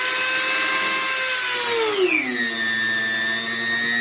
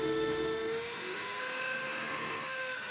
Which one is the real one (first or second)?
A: first